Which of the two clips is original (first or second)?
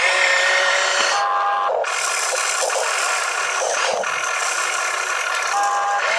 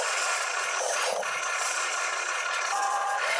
first